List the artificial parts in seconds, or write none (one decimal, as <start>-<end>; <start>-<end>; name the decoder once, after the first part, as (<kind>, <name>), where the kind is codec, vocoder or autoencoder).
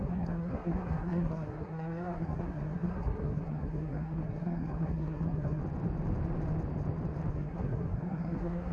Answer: 0.0-5.6 (codec, SNAC); 7.3-8.7